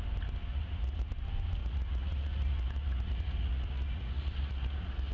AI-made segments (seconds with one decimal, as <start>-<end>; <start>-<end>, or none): 0.5-1.1; 1.6-5.1